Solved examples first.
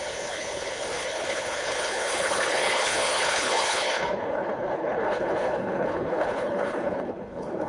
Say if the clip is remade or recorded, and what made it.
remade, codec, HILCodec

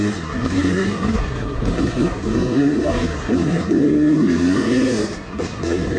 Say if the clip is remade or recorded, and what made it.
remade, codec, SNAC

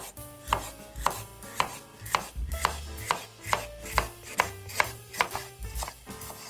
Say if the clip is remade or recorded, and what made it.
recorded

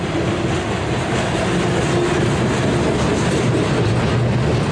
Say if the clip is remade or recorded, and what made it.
recorded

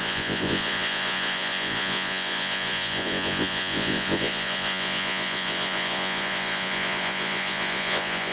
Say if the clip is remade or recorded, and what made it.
remade, vocoder, Vocos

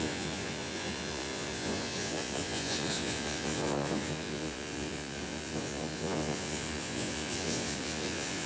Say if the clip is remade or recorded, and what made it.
remade, vocoder, Vocos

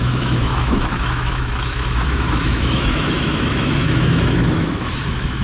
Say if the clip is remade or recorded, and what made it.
remade, autoencoder, DAC-VAE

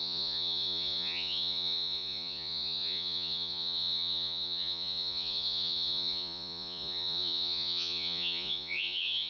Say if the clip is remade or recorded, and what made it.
remade, vocoder, Vocos